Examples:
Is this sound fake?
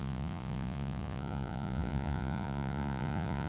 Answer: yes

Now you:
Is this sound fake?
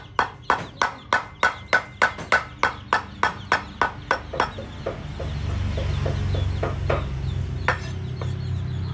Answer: no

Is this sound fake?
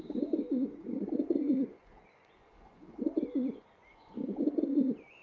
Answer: yes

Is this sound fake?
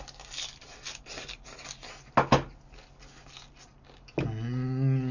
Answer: no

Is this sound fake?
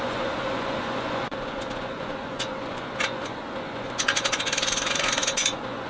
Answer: yes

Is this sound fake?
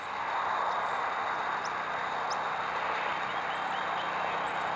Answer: no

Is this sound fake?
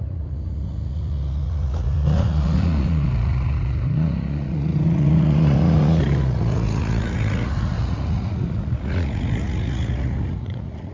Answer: yes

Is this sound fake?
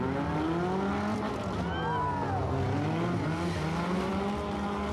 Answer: no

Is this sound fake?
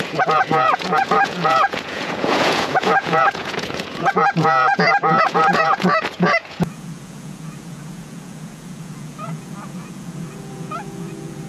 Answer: yes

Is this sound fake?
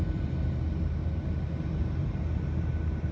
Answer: no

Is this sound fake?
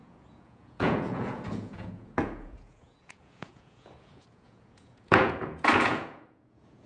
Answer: yes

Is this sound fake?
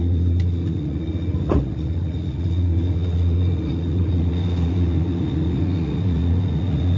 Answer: yes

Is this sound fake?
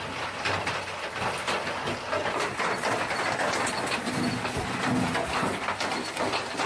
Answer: no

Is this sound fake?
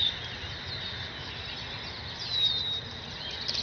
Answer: no